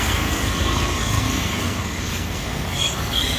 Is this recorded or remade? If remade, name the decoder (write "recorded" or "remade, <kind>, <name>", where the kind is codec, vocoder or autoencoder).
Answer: remade, codec, SNAC